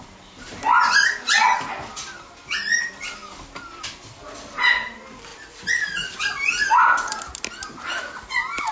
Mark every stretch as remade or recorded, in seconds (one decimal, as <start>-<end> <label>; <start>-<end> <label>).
0.0-8.7 recorded